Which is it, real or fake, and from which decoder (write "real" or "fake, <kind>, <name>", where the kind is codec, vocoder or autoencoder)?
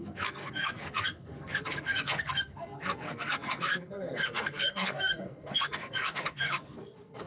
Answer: fake, codec, SNAC